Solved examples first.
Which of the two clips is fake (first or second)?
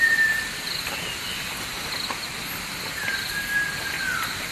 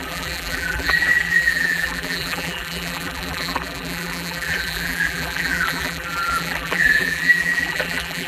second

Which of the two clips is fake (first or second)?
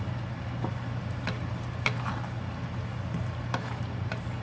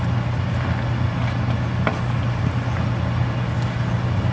first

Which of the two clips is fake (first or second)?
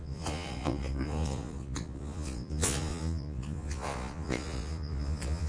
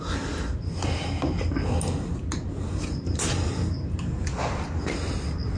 first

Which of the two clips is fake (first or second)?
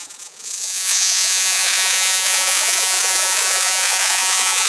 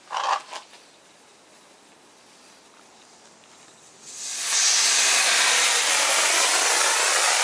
first